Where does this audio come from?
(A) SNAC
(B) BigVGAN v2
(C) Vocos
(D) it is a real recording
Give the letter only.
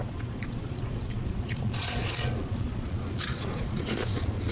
C